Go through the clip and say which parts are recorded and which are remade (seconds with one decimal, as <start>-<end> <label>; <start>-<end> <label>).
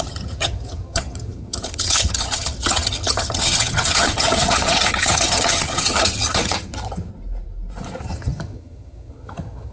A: 0.0-7.1 remade; 7.1-8.0 recorded; 8.0-9.7 remade